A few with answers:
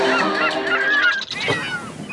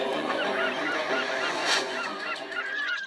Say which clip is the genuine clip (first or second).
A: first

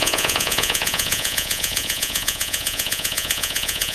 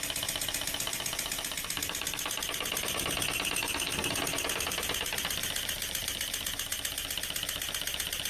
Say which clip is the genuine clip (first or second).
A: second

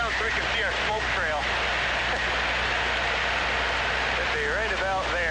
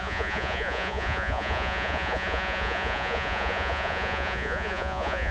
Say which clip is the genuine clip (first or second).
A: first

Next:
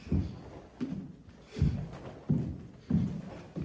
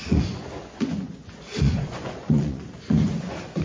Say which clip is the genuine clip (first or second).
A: first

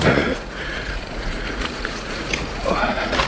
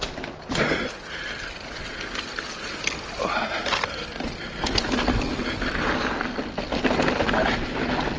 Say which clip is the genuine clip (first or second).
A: second